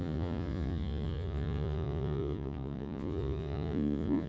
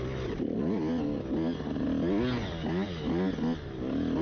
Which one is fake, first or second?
first